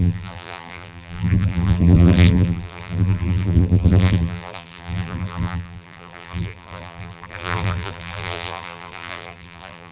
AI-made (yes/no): yes